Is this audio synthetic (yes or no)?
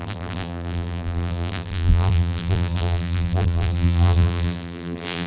yes